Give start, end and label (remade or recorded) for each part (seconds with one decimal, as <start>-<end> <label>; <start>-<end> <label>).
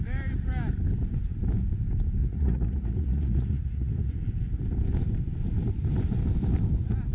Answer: 0.0-2.2 recorded; 2.2-4.2 remade; 4.2-7.1 recorded